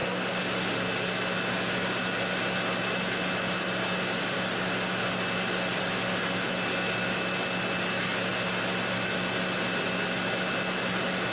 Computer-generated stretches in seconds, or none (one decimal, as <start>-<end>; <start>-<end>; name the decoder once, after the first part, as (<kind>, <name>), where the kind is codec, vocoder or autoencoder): none